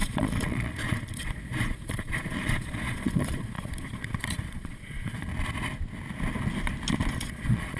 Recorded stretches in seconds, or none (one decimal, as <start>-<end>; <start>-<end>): 5.3-7.1